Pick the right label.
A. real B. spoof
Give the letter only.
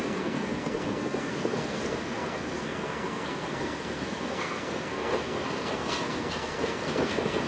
B